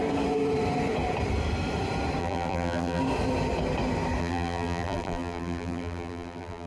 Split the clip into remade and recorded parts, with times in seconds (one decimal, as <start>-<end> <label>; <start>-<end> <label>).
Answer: 0.0-2.2 recorded; 2.2-3.0 remade; 3.0-4.2 recorded; 4.2-6.7 remade